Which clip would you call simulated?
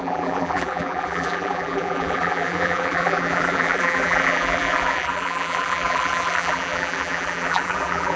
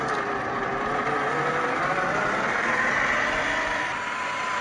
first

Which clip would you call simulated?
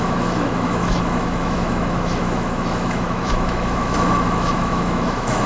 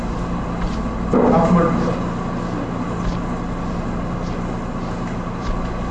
first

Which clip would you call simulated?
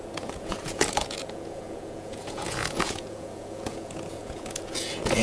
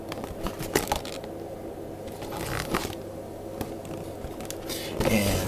first